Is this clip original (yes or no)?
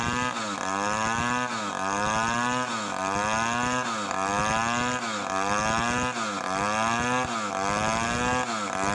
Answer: yes